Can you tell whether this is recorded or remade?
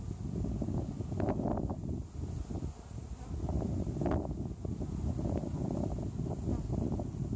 recorded